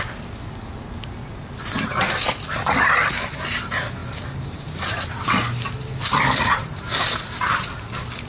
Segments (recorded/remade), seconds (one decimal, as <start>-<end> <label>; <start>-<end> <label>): 0.0-8.3 recorded